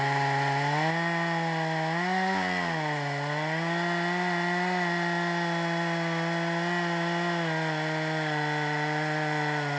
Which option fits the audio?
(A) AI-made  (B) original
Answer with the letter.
B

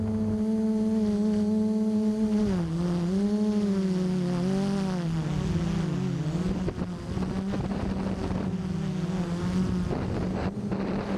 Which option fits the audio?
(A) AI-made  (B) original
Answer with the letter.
B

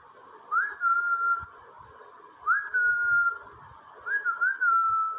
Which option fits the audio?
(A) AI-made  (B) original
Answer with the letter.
B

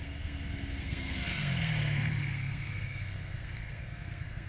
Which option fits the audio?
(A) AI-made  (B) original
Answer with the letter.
A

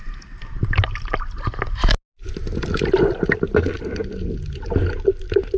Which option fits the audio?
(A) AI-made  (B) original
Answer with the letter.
B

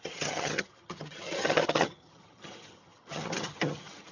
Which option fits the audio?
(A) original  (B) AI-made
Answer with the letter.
B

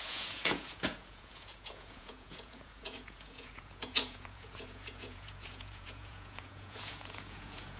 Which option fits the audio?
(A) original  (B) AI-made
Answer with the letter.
B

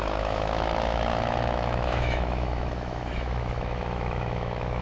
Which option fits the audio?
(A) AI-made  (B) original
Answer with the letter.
A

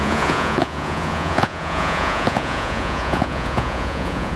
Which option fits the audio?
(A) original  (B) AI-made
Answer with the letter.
B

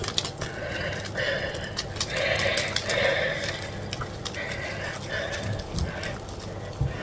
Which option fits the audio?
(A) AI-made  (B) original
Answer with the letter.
B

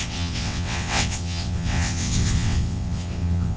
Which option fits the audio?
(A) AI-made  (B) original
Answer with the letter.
A